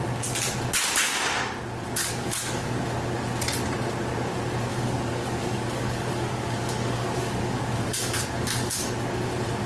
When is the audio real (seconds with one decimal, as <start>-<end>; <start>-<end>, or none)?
0.0-2.0; 2.8-4.7; 8.9-9.7